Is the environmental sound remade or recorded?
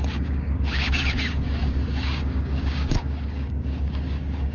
remade